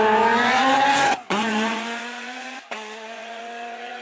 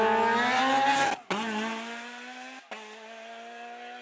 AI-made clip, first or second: first